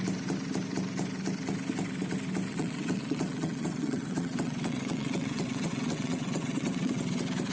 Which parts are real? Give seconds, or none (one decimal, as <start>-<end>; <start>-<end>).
0.0-2.5; 7.0-7.5